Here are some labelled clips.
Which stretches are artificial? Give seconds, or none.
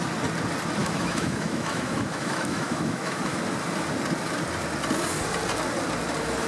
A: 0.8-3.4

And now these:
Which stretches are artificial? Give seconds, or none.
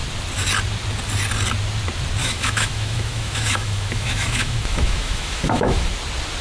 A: 2.2-5.9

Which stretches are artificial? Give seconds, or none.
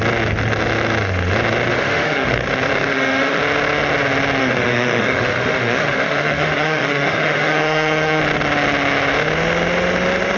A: 1.7-2.3; 2.9-3.4; 4.4-8.2